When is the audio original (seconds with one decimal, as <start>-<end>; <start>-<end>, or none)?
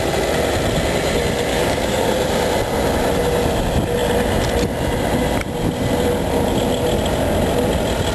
0.0-1.5; 2.1-8.1